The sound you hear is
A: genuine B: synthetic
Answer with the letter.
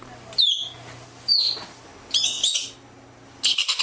A